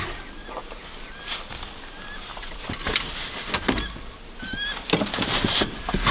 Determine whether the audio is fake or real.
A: real